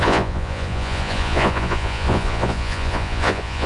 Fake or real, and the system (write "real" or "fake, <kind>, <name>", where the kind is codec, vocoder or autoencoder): fake, vocoder, Vocos